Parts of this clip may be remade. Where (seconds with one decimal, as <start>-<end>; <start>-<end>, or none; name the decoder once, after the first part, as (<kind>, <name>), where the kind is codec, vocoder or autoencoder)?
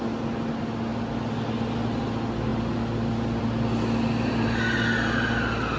none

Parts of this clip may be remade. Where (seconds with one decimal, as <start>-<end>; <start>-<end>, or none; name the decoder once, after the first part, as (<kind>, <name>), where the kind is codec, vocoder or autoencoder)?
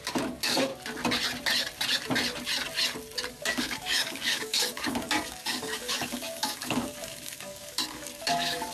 0.0-0.7 (codec, DAC); 3.3-8.7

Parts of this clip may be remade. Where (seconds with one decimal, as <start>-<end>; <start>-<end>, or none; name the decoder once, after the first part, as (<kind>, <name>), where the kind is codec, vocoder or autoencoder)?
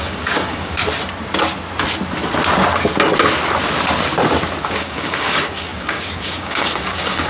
0.0-0.8 (codec, DAC); 4.6-7.3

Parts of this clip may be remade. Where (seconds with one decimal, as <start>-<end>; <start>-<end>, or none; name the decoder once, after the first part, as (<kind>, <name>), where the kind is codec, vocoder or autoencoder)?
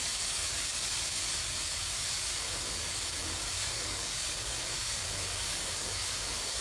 0.0-6.6 (codec, DAC)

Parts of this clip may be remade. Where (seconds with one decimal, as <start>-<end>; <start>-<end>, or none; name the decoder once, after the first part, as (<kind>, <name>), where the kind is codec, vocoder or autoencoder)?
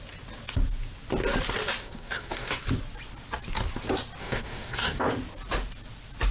1.8-2.5 (codec, DAC); 4.2-5.0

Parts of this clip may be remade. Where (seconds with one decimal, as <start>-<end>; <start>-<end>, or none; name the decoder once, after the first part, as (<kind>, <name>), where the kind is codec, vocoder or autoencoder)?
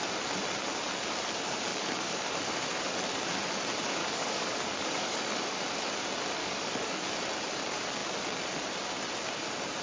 1.7-2.8 (codec, DAC); 4.0-5.6; 6.4-7.0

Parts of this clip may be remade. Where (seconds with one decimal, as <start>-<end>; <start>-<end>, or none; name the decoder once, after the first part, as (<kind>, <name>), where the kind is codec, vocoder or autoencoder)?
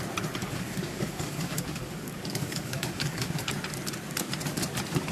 0.4-3.5 (codec, DAC)